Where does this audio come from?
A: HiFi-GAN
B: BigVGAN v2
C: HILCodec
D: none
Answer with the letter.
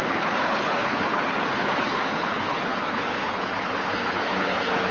C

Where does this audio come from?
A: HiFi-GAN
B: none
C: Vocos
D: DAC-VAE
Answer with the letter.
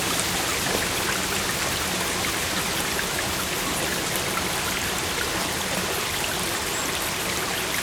B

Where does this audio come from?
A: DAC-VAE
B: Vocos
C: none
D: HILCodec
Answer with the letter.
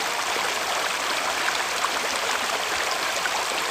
C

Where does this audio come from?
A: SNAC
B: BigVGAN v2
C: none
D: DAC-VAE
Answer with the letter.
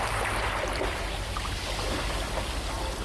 C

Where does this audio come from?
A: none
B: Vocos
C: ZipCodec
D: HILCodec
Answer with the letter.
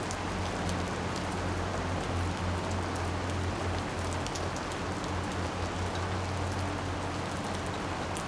A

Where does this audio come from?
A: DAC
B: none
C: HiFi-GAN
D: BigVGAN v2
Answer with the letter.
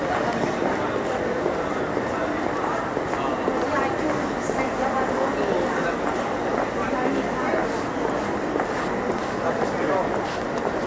B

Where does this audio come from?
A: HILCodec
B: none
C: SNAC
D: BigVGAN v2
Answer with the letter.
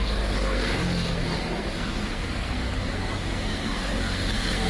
C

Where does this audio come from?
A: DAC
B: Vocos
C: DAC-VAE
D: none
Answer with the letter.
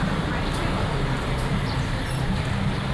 D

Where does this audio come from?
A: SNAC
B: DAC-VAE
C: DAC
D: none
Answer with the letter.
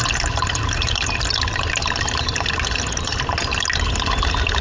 D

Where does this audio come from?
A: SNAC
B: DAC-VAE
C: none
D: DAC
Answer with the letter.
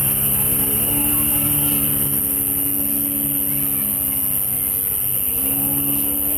C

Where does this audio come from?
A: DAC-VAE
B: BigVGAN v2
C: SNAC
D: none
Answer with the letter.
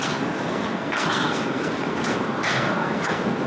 C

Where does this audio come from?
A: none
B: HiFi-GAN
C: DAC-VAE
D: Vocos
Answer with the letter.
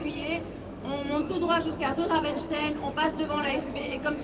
C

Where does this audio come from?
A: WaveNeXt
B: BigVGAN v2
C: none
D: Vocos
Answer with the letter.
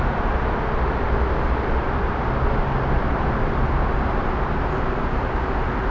C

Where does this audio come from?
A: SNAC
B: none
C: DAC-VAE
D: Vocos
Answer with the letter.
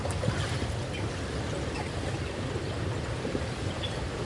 B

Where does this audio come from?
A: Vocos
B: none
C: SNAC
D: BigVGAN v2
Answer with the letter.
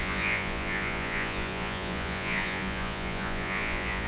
A